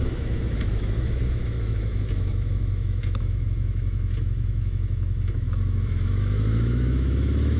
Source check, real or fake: fake